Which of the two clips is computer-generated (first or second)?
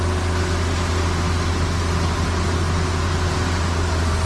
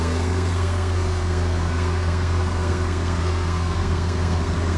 second